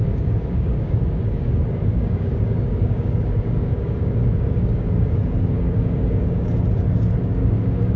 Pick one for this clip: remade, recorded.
remade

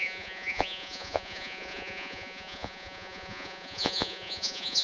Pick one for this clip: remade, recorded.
remade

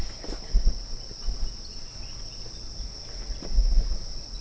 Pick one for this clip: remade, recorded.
recorded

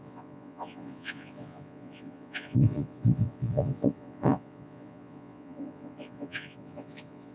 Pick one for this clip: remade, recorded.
remade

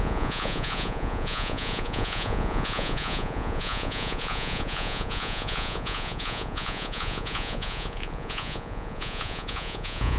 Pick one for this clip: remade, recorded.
remade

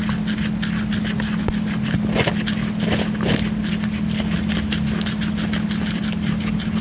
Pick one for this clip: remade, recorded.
remade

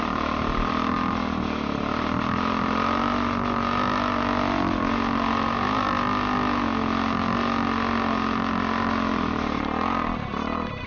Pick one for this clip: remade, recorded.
recorded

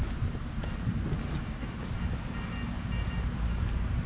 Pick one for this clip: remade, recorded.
recorded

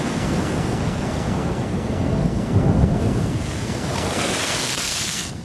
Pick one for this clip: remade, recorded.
remade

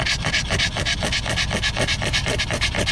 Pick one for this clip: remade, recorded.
recorded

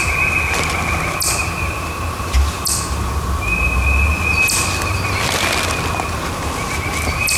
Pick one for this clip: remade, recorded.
recorded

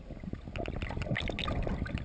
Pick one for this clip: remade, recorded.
recorded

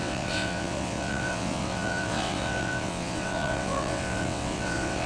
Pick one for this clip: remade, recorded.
remade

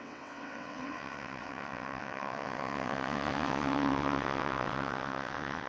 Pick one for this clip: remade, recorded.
remade